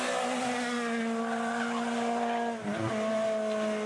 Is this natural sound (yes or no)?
yes